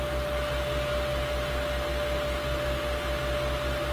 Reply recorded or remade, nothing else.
recorded